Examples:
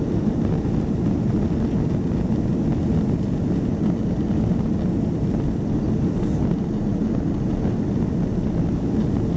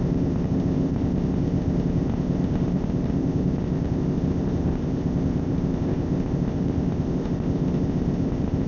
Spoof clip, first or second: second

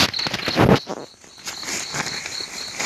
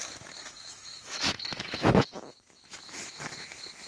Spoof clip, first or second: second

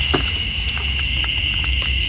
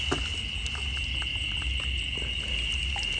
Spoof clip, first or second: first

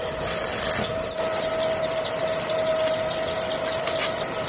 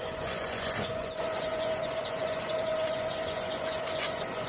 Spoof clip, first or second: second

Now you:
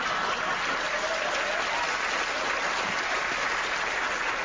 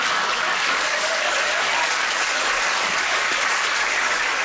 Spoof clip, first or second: second